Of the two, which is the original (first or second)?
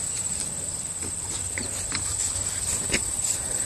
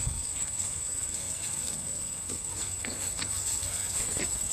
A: first